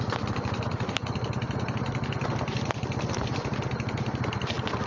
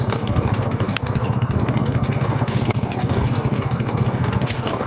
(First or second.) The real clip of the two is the first